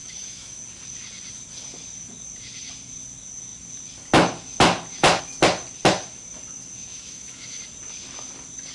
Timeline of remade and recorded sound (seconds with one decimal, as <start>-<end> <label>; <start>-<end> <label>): 0.0-0.6 remade; 0.6-6.9 recorded; 6.9-7.6 remade; 7.6-8.7 recorded